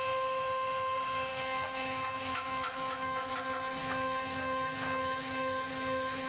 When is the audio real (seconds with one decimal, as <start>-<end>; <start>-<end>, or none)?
0.0-1.3; 3.3-3.8